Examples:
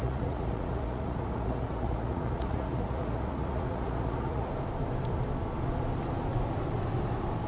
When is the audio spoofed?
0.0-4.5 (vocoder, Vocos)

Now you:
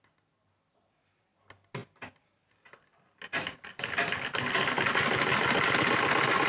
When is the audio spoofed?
none

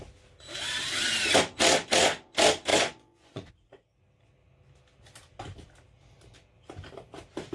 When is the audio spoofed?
2.7-3.5 (vocoder, Vocos)

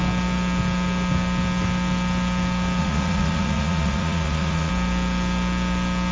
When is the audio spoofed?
2.8-4.7 (vocoder, Vocos)

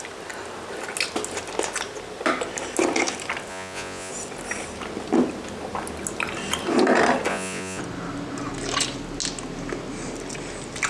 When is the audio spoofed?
3.5-4.1 (vocoder, Vocos); 7.3-7.8

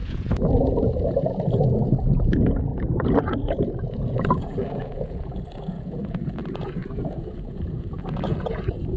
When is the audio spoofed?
0.0-9.0 (vocoder, Vocos)